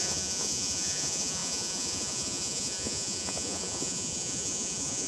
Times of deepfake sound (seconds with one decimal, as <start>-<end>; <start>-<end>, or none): 0.0-5.1